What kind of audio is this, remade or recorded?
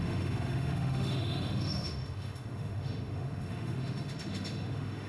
remade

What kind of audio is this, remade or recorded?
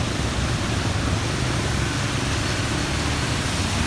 recorded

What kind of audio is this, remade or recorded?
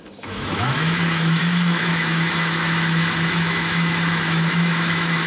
remade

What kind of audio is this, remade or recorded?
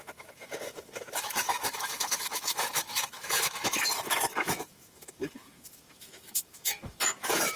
remade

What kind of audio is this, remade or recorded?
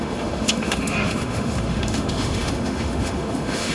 remade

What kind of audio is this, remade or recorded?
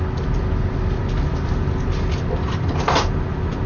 recorded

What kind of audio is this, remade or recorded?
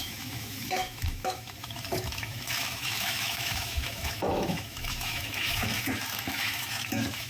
remade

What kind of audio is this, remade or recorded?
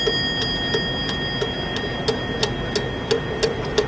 recorded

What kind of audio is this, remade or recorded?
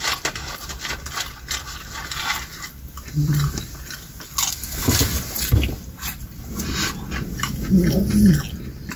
recorded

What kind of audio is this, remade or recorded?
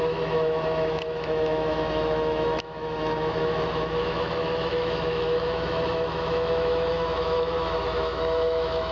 remade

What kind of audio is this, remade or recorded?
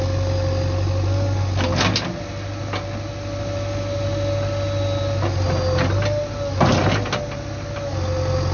recorded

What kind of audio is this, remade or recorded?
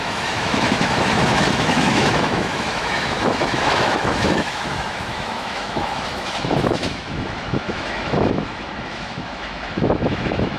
remade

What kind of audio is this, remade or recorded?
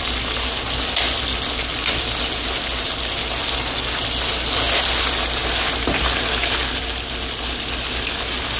recorded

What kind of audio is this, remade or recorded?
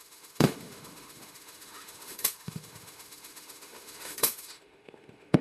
remade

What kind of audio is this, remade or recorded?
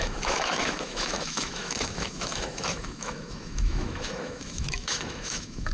remade